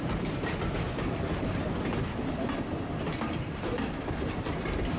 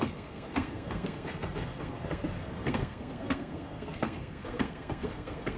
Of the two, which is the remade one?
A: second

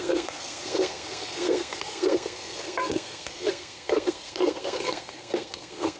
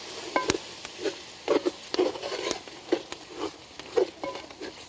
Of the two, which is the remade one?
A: first